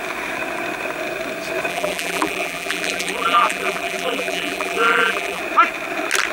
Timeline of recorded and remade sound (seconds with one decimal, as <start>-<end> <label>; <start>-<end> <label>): 0.0-1.7 recorded; 1.7-5.4 remade; 5.4-6.3 recorded